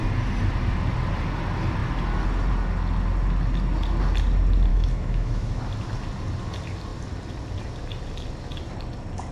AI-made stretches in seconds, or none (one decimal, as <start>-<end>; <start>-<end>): 4.7-5.6